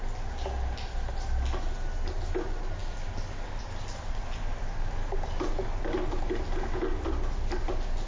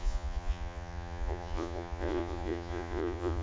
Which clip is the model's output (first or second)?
second